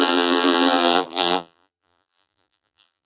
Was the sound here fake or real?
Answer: fake